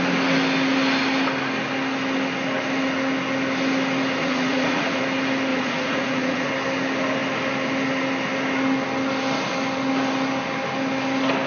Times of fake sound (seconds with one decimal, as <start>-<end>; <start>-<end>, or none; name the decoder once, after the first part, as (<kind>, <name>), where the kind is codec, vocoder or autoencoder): 4.2-5.0 (vocoder, Vocos); 5.5-6.5